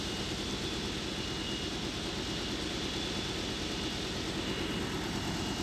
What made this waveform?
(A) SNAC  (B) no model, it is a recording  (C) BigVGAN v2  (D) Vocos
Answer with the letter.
B